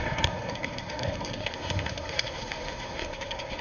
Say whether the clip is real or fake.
fake